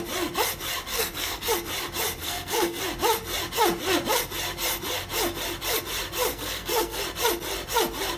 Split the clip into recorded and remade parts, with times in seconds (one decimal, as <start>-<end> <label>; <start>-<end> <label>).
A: 0.0-0.9 recorded; 0.9-1.5 remade; 1.5-2.2 recorded; 2.2-2.8 remade; 2.8-6.3 recorded; 6.3-7.0 remade; 7.0-8.2 recorded